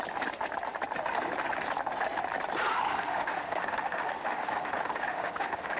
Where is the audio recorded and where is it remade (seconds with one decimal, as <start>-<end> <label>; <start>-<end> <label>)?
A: 0.0-2.7 recorded; 2.7-5.8 remade